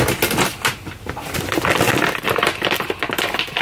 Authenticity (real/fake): real